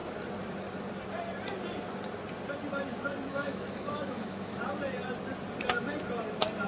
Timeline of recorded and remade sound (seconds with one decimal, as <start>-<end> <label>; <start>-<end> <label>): 0.0-3.3 recorded; 3.3-4.6 remade; 4.6-6.7 recorded